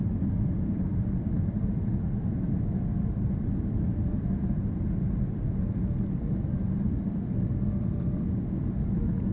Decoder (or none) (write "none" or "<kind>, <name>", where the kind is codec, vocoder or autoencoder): vocoder, BigVGAN v2